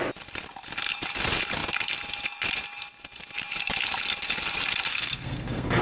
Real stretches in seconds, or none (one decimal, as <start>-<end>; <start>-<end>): 0.0-4.9